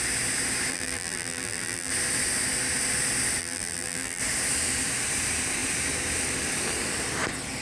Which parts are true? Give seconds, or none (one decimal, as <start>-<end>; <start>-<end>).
0.0-0.7; 1.9-3.4; 4.2-7.6